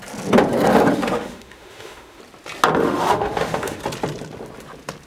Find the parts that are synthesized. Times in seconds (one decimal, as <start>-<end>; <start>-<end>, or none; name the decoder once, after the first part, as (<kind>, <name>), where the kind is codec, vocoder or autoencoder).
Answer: 0.9-2.2 (autoencoder, DAC-VAE); 2.8-3.8